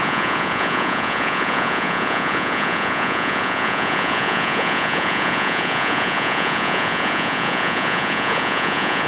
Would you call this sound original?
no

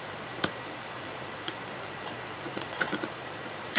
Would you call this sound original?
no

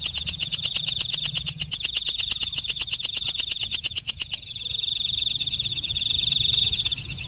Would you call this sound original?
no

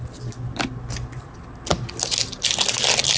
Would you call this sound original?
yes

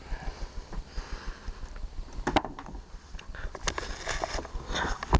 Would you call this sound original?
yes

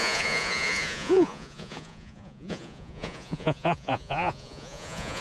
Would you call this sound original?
no